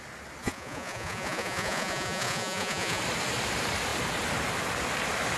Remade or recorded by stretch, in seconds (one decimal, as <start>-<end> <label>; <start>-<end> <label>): 0.0-0.4 recorded; 0.4-3.0 remade; 3.0-5.4 recorded